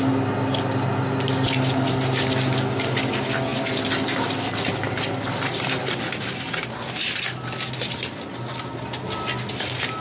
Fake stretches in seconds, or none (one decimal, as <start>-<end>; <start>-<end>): 3.5-5.5